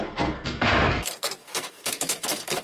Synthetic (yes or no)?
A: yes